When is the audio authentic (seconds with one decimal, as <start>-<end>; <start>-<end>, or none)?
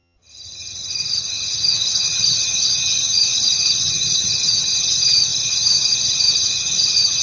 none